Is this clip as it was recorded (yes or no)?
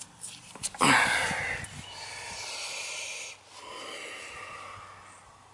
yes